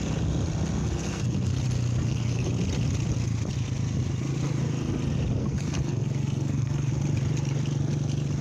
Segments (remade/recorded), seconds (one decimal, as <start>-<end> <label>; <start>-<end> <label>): 0.0-0.8 recorded; 0.8-1.6 remade; 1.6-2.0 recorded; 2.0-2.5 remade; 2.5-5.4 recorded; 5.4-6.9 remade; 6.9-8.4 recorded